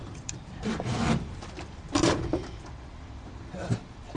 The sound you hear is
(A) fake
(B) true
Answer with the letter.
A